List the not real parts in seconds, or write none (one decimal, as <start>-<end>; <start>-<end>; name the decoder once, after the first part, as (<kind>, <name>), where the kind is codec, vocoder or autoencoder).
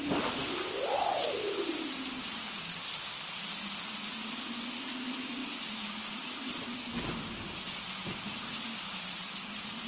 none